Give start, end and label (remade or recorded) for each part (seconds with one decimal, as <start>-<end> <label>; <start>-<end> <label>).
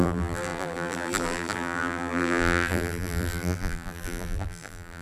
0.0-5.0 remade